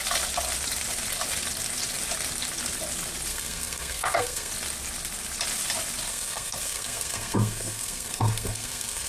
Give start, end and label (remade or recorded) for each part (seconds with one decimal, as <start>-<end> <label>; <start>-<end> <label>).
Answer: 0.0-3.3 recorded; 3.3-4.5 remade; 4.5-6.1 recorded; 6.1-9.1 remade